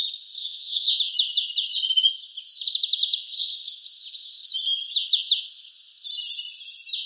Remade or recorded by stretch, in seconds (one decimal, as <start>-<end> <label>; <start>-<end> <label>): 0.0-0.4 recorded; 0.4-1.0 remade; 1.0-7.1 recorded